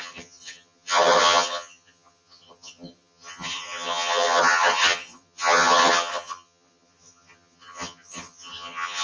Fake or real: fake